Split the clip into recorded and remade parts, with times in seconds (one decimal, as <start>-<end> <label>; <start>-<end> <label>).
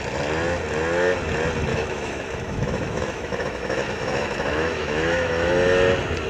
0.0-1.7 recorded; 1.7-5.5 remade; 5.5-6.3 recorded